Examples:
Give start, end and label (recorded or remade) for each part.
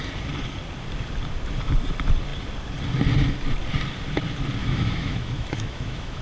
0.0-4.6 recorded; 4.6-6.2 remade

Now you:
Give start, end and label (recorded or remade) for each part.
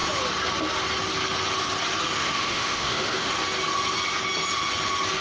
0.0-2.2 recorded; 2.2-3.3 remade; 3.3-5.2 recorded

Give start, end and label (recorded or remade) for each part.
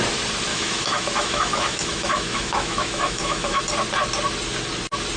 0.0-0.5 recorded; 0.5-3.6 remade; 3.6-5.2 recorded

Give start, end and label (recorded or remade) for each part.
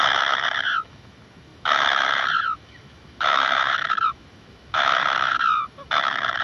0.0-6.4 remade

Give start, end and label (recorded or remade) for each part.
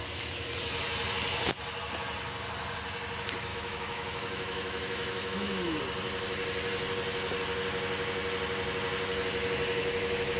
0.0-3.5 recorded; 3.5-5.8 remade; 5.8-9.8 recorded; 9.8-10.4 remade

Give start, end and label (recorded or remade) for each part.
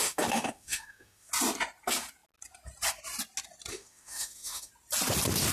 0.0-1.3 remade; 1.3-3.7 recorded; 3.7-4.7 remade; 4.7-5.5 recorded